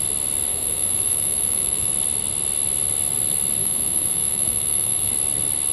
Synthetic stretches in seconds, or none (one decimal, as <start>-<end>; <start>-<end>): 0.5-1.9; 3.6-5.1